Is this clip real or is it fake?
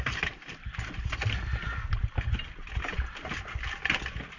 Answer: real